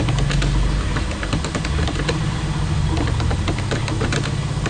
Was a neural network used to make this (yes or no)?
no